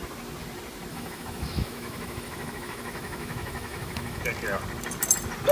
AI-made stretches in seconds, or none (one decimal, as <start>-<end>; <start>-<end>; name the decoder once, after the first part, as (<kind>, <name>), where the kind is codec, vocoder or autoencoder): 0.9-4.2 (autoencoder, DAC-VAE)